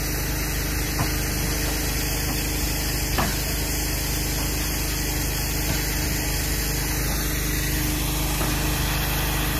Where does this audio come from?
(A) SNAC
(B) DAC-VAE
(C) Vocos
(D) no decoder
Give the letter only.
D